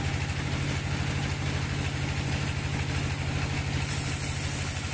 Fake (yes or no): no